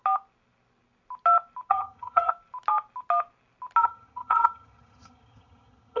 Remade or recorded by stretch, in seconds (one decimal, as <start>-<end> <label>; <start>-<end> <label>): 0.0-1.7 recorded; 1.7-2.3 remade; 2.3-3.8 recorded; 3.8-6.0 remade